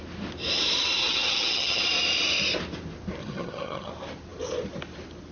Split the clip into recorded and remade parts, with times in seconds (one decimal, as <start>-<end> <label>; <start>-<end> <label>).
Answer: 0.0-1.0 recorded; 1.0-1.8 remade; 1.8-3.2 recorded; 3.2-3.9 remade; 3.9-5.3 recorded